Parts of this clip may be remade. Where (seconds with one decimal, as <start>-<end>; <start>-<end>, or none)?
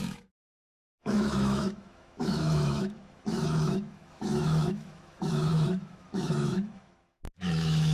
0.0-7.9